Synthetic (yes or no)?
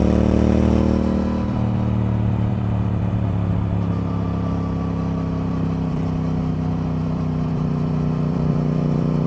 yes